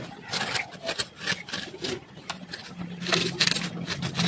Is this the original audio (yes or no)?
yes